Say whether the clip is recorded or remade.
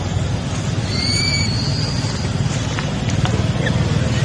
recorded